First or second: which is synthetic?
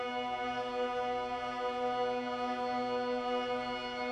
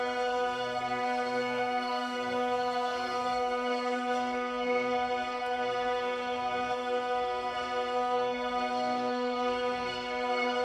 second